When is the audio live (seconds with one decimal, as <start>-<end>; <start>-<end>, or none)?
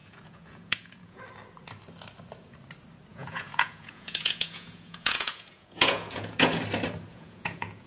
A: 1.2-3.1; 6.6-7.1